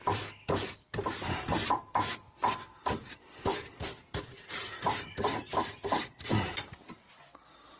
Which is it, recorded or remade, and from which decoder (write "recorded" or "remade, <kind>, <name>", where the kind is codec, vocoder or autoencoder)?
remade, vocoder, BigVGAN v2